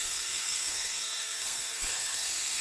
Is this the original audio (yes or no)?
no